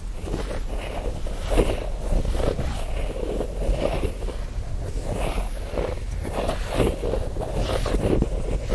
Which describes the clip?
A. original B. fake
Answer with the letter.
A